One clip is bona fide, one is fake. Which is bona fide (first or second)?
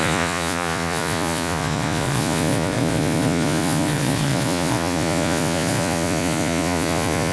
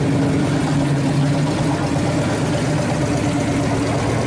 second